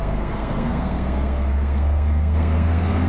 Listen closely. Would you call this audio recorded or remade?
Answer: remade